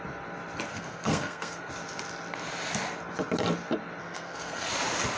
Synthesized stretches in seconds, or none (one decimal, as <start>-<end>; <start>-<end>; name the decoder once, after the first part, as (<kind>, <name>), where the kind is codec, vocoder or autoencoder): 0.7-1.7 (codec, SNAC); 4.0-4.7